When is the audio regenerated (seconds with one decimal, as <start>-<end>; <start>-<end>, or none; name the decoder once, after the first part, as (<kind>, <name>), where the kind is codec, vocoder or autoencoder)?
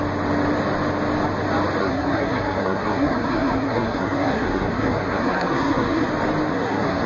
1.8-6.1 (codec, SNAC); 6.5-7.1